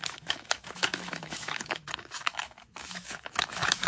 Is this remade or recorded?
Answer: remade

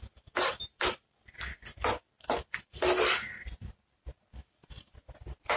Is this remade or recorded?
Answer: recorded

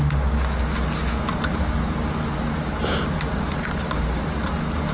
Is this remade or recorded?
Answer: recorded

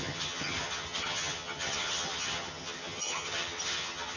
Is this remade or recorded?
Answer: remade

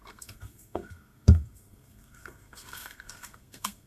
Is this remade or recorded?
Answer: remade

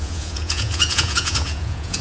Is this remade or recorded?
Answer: remade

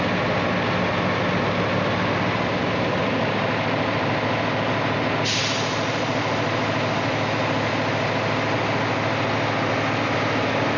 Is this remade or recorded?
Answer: recorded